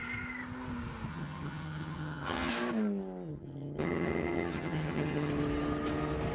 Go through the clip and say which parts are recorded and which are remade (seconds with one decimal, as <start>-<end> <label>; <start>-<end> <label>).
0.0-1.1 recorded; 1.1-2.5 remade; 2.5-3.3 recorded; 3.3-5.3 remade; 5.3-6.3 recorded